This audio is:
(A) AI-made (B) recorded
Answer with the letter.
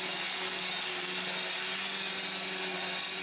B